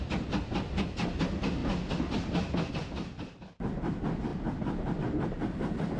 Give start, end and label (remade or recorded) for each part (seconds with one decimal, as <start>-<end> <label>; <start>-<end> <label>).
0.0-6.0 recorded